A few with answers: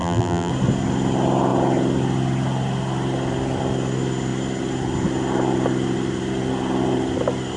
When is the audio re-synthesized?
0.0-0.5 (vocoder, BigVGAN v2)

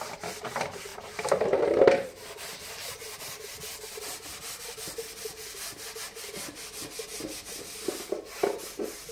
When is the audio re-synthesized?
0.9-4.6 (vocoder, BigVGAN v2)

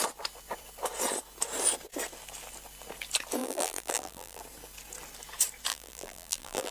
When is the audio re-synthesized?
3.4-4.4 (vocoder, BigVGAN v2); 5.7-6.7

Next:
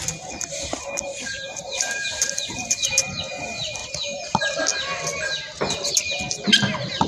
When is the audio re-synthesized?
1.1-3.2 (vocoder, BigVGAN v2); 3.8-4.6